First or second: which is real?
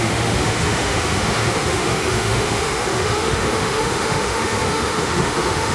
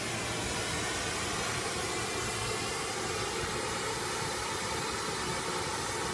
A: second